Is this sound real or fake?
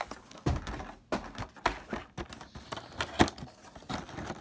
real